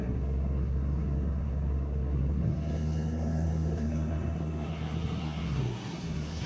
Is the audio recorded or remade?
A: remade